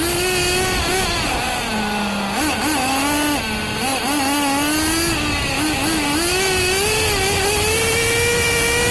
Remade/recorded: recorded